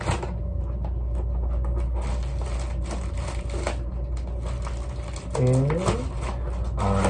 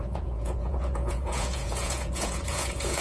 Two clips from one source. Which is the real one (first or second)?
first